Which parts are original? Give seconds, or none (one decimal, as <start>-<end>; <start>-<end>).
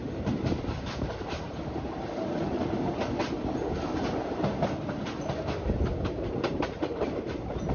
2.6-6.1